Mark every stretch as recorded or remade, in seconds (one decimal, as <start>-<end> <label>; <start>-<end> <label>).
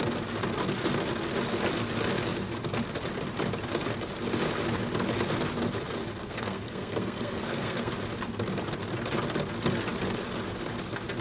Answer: 0.0-6.2 recorded; 6.2-7.9 remade; 7.9-11.2 recorded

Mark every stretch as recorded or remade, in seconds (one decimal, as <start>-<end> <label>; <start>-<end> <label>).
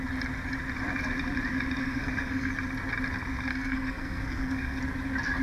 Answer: 0.0-1.8 recorded; 1.8-2.5 remade; 2.5-3.5 recorded; 3.5-4.8 remade; 4.8-5.4 recorded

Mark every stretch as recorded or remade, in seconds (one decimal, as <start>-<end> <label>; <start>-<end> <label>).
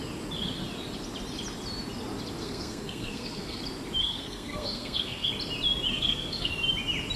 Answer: 0.0-2.4 recorded; 2.4-3.6 remade; 3.6-4.0 recorded; 4.0-5.3 remade; 5.3-5.9 recorded; 5.9-6.5 remade; 6.5-7.2 recorded